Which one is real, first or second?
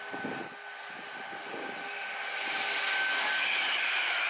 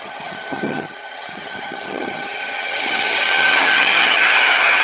first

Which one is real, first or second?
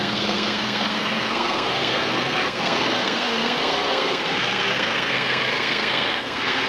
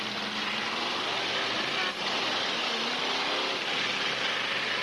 second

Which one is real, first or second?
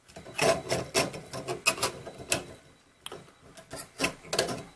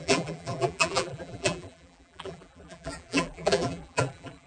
first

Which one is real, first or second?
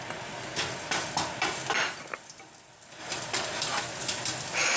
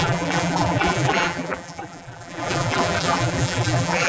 first